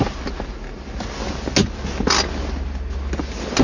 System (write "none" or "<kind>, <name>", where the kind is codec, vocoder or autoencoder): none